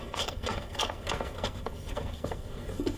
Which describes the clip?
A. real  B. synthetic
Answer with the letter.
B